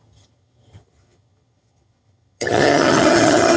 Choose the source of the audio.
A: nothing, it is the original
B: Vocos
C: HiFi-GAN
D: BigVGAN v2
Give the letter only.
C